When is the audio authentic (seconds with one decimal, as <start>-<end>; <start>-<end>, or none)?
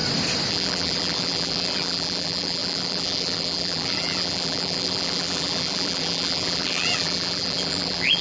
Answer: 0.0-0.5